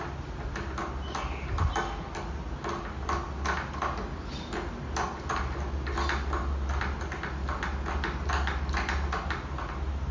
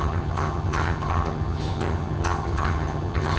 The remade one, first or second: second